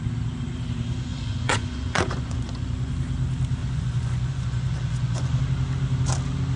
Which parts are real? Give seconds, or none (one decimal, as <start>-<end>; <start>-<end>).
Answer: 0.0-1.1; 2.9-3.6; 5.4-6.6